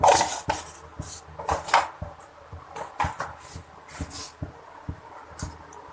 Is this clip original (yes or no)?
yes